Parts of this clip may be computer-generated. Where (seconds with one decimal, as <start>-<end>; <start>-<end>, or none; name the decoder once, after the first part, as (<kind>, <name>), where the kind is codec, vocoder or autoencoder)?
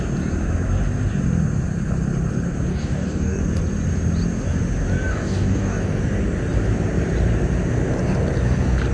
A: 2.7-3.4 (codec, DAC); 5.1-6.0